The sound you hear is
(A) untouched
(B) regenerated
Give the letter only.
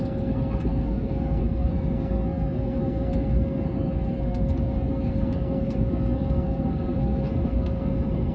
B